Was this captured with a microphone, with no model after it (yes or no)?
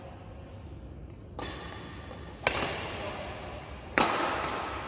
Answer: yes